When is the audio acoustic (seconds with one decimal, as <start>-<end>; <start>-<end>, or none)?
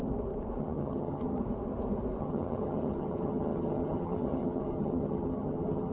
0.0-0.6; 1.4-2.2